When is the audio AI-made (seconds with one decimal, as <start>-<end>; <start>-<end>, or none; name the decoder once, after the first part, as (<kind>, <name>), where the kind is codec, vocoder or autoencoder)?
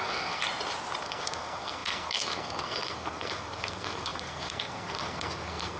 0.0-0.4 (codec, SNAC); 1.0-5.8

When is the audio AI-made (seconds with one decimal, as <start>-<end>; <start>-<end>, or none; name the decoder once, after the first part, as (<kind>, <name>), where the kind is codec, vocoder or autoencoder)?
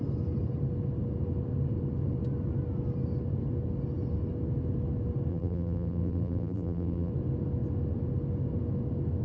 5.3-7.1 (vocoder, BigVGAN v2)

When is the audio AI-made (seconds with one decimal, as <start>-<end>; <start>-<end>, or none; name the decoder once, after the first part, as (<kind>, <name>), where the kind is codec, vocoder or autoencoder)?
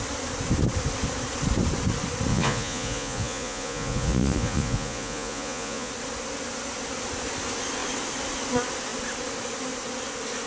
2.3-5.9 (vocoder, Vocos)